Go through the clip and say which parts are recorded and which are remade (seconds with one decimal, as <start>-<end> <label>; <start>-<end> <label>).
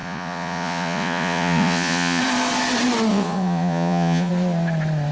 0.0-2.2 remade; 2.2-3.1 recorded; 3.1-4.3 remade; 4.3-5.1 recorded